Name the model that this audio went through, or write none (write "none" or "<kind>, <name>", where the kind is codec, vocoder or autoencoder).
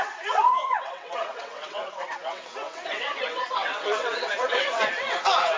vocoder, WaveNeXt